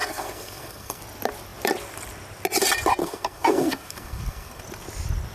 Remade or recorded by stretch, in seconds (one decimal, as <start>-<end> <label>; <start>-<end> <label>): 0.0-1.0 remade; 1.0-3.0 recorded; 3.0-4.6 remade; 4.6-5.3 recorded